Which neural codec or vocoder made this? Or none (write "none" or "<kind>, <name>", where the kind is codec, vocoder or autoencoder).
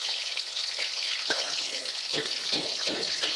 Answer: codec, HILCodec